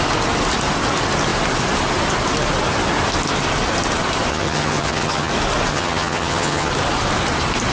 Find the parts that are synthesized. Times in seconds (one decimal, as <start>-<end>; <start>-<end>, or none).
4.3-5.3; 5.7-6.7